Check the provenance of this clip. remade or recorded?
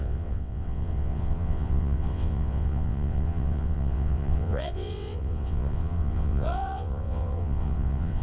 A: remade